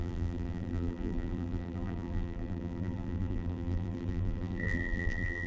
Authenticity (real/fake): fake